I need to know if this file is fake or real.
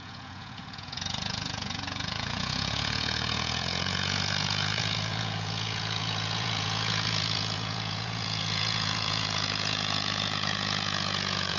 fake